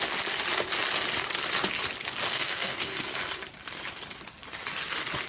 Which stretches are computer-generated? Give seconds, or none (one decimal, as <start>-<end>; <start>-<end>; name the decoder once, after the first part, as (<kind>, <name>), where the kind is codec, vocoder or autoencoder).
2.3-3.0 (codec, SNAC)